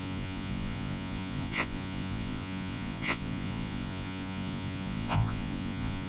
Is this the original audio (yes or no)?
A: no